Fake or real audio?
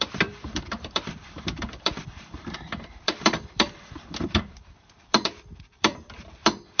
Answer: fake